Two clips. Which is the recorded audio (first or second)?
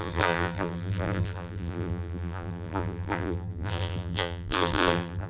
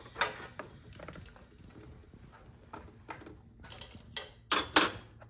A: second